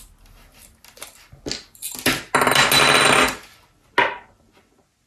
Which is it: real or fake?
real